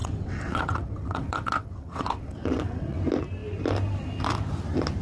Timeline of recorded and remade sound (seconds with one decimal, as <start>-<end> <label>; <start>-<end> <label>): 0.0-3.0 remade; 3.0-5.0 recorded

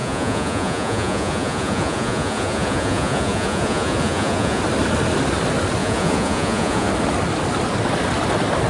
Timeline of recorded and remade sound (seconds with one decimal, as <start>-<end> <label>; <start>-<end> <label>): 0.0-4.6 remade; 4.6-5.8 recorded; 5.8-6.9 remade; 6.9-8.7 recorded

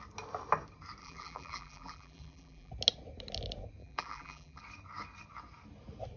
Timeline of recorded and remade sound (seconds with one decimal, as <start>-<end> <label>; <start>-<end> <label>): 0.0-1.0 recorded; 1.0-2.7 remade; 2.7-3.8 recorded; 3.8-4.6 remade; 4.6-6.2 recorded

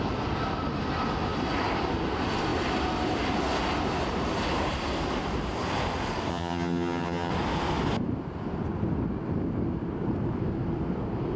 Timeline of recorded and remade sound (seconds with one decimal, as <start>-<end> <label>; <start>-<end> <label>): 0.0-6.3 recorded; 6.3-7.3 remade; 7.3-11.4 recorded

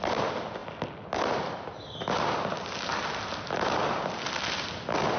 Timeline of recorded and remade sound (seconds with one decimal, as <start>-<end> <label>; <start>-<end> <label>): 0.0-5.2 recorded

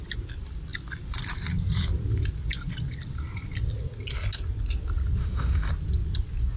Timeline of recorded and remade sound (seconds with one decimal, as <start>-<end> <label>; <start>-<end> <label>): 0.0-5.2 recorded; 5.2-5.7 remade; 5.7-6.6 recorded

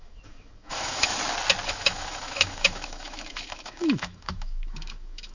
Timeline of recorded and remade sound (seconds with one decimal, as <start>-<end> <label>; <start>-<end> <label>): 0.0-1.1 remade; 1.1-1.7 recorded; 1.7-5.3 remade